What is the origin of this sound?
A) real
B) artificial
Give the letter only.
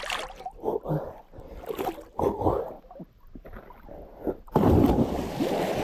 A